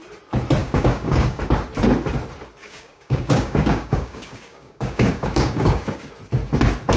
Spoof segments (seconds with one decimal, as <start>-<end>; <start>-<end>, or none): 0.6-1.4; 2.6-6.1